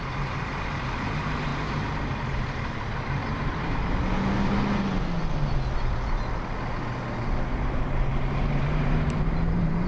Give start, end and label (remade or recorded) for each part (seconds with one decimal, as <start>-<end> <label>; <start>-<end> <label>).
0.0-3.2 remade; 3.2-7.2 recorded; 7.2-9.9 remade